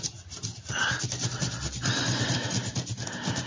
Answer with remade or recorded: recorded